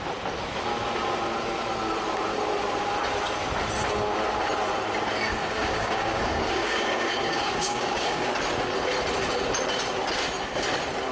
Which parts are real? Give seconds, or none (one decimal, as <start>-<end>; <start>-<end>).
0.0-5.3; 8.3-11.1